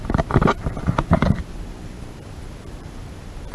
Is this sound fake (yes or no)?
yes